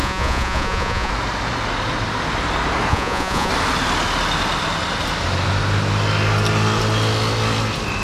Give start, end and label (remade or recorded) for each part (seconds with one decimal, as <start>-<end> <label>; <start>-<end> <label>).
0.0-1.1 remade; 1.1-2.9 recorded; 2.9-3.5 remade; 3.5-8.0 recorded